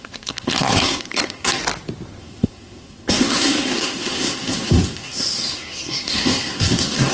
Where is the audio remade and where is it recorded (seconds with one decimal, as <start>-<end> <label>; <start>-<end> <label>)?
0.0-1.6 remade; 1.6-2.2 recorded; 2.2-7.1 remade